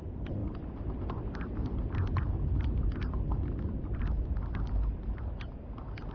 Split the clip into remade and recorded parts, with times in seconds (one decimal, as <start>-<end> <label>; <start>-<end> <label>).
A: 0.0-6.1 recorded